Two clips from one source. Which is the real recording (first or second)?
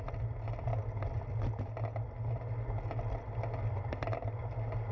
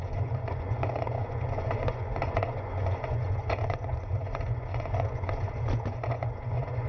first